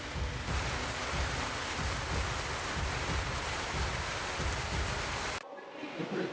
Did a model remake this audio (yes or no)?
no